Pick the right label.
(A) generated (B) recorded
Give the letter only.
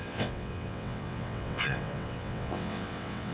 A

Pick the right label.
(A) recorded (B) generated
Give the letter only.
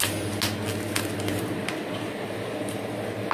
A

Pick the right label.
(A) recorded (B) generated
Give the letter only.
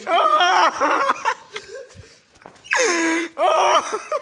B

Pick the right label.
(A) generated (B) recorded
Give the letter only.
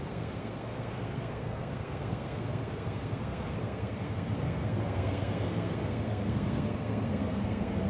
A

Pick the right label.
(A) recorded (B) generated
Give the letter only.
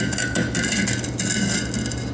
A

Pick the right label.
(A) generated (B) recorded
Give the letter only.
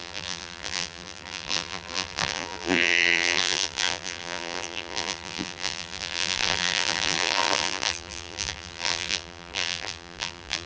A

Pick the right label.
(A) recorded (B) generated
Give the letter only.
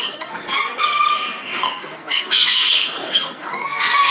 B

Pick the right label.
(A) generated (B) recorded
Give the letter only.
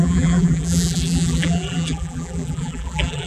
A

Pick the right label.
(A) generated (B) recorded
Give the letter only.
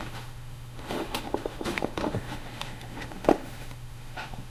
A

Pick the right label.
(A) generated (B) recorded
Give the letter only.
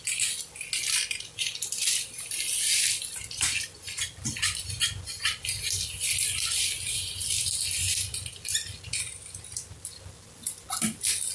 B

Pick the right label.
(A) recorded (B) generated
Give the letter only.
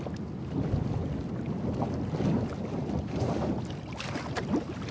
A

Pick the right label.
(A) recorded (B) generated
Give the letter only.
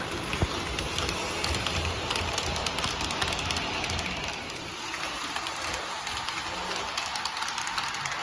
A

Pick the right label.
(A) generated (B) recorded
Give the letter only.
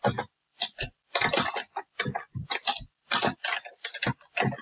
A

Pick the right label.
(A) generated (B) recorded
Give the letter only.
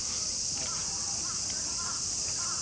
B